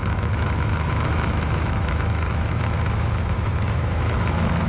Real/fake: fake